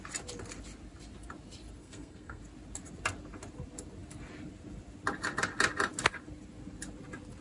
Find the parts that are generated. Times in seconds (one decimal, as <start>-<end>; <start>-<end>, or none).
1.8-2.4